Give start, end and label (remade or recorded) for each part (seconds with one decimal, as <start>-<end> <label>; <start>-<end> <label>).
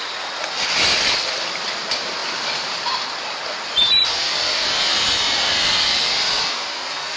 0.0-7.2 recorded